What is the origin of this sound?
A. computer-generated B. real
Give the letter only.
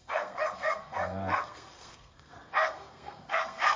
A